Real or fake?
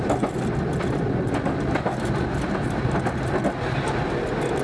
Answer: real